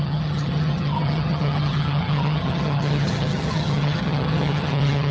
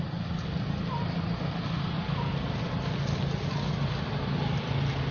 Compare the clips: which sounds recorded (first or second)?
second